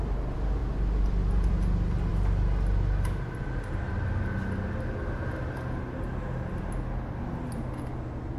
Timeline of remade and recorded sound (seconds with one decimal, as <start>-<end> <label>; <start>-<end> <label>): 0.0-8.4 recorded

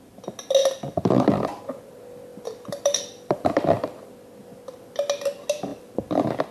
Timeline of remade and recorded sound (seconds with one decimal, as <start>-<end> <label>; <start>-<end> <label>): 0.0-0.6 recorded; 0.6-1.6 remade; 1.6-2.3 recorded; 2.3-4.5 remade; 4.5-6.5 recorded

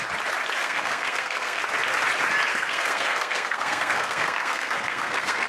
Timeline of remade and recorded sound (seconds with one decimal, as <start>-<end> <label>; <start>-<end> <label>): 0.0-0.6 recorded; 0.6-1.6 remade; 1.6-2.5 recorded; 2.5-5.5 remade

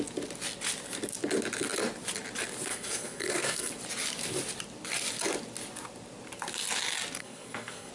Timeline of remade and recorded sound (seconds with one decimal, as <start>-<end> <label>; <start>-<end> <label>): 0.0-2.7 recorded; 2.7-3.7 remade; 3.7-7.2 recorded; 7.2-7.9 remade

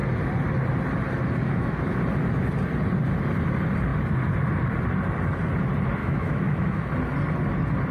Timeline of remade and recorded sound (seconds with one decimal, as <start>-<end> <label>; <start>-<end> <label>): 0.0-1.4 recorded; 1.4-2.0 remade; 2.0-6.0 recorded; 6.0-6.8 remade; 6.8-7.9 recorded

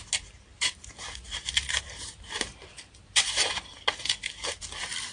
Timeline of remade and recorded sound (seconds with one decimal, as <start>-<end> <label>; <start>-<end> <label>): 0.0-0.5 recorded; 0.5-3.6 remade; 3.6-5.1 recorded

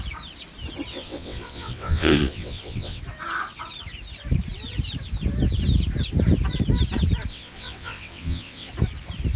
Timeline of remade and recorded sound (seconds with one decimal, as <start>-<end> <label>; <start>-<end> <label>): 0.0-0.9 recorded; 0.9-3.0 remade; 3.0-7.3 recorded; 7.3-8.7 remade; 8.7-9.4 recorded